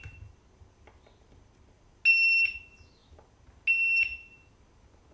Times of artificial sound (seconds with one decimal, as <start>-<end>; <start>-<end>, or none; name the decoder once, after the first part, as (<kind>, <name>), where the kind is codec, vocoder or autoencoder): none